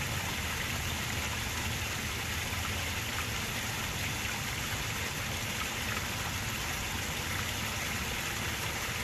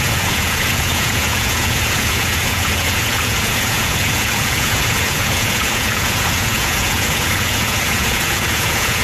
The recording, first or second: first